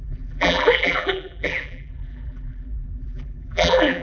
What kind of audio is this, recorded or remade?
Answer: remade